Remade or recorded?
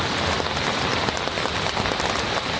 recorded